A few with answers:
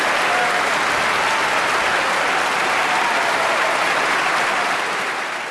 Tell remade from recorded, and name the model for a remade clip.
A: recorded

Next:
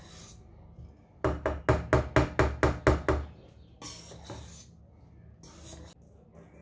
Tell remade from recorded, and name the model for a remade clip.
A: recorded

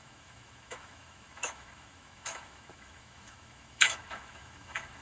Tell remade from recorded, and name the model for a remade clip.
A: remade, autoencoder, DAC-VAE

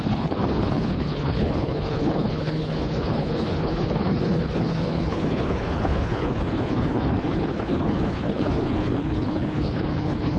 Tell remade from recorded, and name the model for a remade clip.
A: remade, codec, HILCodec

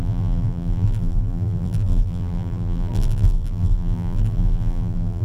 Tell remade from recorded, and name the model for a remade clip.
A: remade, vocoder, BigVGAN v2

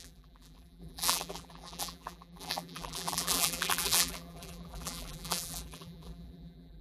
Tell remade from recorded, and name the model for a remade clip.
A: remade, vocoder, BigVGAN v2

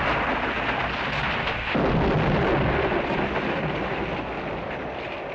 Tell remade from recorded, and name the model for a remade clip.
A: recorded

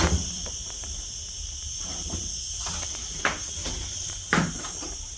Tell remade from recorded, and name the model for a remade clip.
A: remade, vocoder, BigVGAN v2